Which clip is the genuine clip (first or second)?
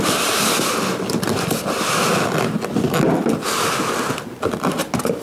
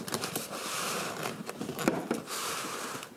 first